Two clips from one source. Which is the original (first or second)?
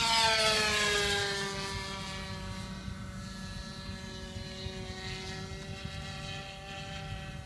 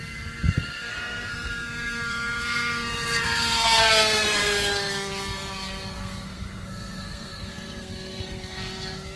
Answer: first